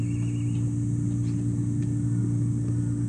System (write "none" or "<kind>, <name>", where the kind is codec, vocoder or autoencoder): none